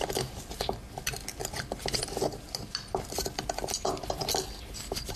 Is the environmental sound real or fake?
real